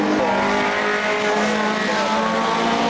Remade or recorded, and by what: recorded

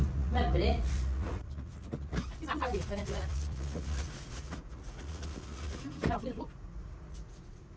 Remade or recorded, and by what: remade, vocoder, Vocos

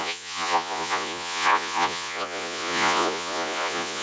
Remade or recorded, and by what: remade, vocoder, Vocos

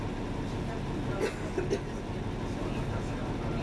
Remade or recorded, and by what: recorded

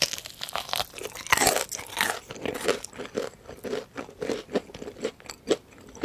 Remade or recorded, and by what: recorded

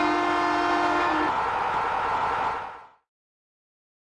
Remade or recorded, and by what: recorded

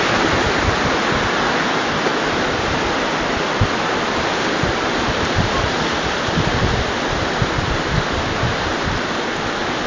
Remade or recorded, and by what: recorded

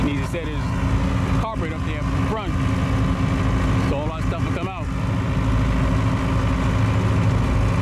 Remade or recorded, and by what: recorded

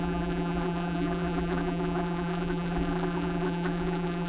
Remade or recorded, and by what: remade, vocoder, BigVGAN v2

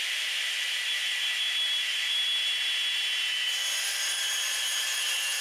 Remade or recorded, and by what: remade, vocoder, BigVGAN v2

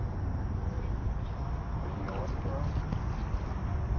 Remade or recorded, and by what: recorded